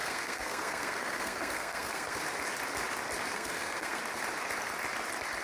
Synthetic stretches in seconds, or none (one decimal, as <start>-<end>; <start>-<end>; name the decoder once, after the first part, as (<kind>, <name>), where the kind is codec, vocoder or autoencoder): 0.0-2.2 (codec, SNAC); 3.3-4.0